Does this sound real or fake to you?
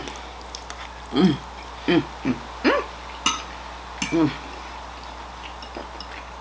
real